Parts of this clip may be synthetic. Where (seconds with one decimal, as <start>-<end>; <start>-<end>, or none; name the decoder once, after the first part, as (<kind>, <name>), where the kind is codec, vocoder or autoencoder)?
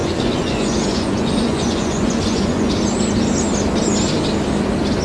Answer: 0.0-2.7 (vocoder, Vocos)